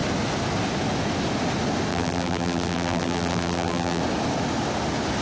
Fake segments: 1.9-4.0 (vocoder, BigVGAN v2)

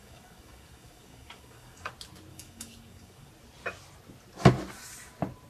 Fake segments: 0.0-1.9 (codec, DAC); 2.3-3.3

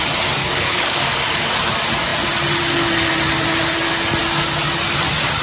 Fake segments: 0.4-1.5 (codec, DAC)

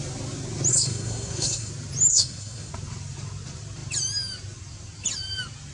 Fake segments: 0.7-1.7 (codec, SNAC); 2.1-2.7

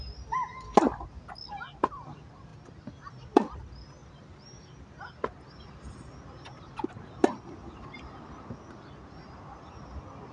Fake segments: none

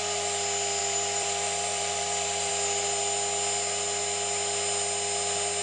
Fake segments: 0.8-2.5 (vocoder, BigVGAN v2)